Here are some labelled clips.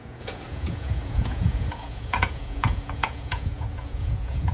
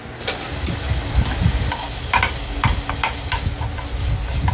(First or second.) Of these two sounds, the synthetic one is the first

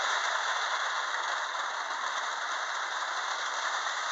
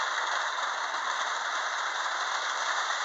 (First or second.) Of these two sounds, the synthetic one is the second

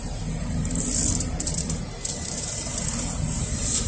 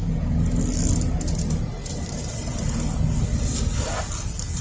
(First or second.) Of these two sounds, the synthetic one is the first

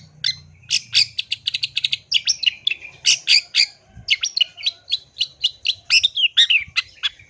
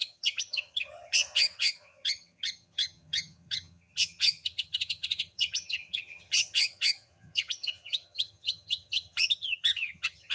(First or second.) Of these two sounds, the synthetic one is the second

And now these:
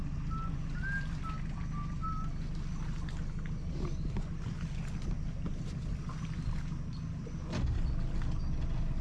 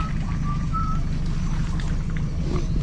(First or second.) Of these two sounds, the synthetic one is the second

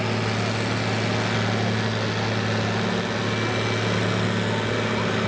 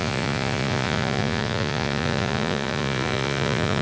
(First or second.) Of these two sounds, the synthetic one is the second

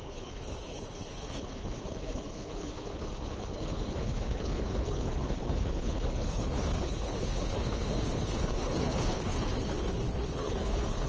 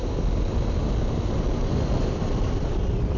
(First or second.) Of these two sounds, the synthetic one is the first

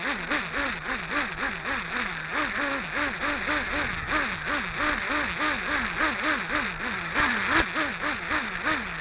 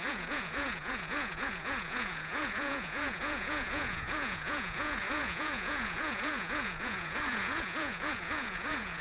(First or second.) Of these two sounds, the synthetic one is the second